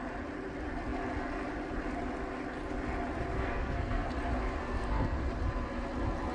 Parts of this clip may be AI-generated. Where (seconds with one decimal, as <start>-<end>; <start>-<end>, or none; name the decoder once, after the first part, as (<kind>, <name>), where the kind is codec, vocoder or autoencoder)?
3.3-4.1 (codec, SNAC); 4.6-5.2

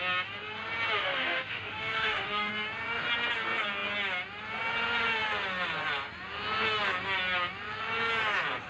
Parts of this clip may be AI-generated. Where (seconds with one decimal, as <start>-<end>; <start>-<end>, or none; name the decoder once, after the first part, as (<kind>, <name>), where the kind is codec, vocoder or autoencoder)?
1.0-2.5 (autoencoder, DAC-VAE)

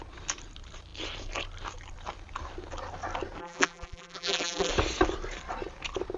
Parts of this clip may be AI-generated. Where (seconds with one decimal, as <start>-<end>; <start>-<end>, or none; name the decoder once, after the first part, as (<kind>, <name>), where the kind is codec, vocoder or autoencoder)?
3.4-4.7 (vocoder, BigVGAN v2)